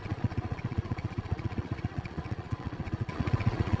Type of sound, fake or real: fake